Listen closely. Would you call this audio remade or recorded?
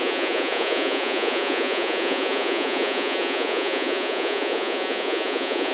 remade